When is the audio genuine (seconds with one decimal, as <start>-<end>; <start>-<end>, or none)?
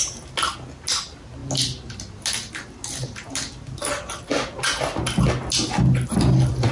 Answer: 0.0-6.7